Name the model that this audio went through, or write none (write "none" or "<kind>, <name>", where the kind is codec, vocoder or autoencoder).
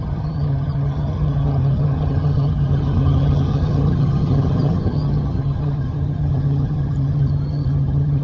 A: vocoder, HiFi-GAN